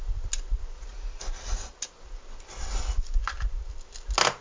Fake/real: real